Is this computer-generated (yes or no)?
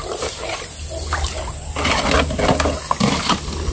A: no